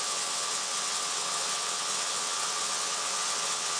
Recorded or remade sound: remade